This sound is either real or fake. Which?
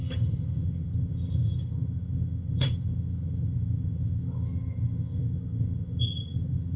fake